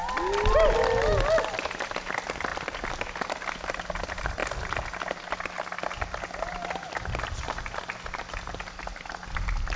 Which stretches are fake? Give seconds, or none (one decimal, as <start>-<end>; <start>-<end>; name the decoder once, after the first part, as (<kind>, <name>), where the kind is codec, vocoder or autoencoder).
none